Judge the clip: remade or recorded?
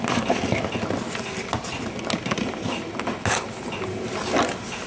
recorded